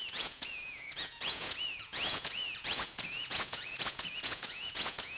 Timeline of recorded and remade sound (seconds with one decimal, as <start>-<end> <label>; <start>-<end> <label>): 0.0-5.2 remade